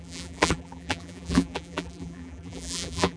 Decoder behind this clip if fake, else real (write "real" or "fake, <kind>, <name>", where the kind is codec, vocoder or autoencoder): fake, vocoder, BigVGAN v2